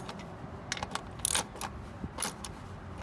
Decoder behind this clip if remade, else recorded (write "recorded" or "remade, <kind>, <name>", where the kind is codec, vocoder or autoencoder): recorded